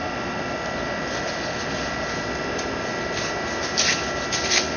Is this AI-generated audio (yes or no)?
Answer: no